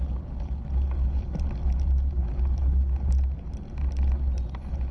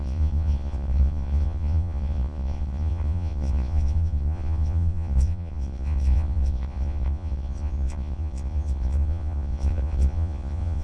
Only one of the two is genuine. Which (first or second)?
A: first